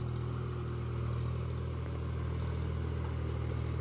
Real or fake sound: real